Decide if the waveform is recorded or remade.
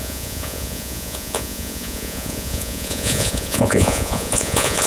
remade